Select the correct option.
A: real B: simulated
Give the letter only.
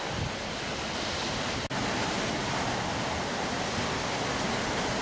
A